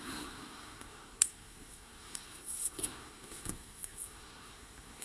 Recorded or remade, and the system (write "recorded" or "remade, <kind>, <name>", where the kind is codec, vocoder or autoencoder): remade, codec, SNAC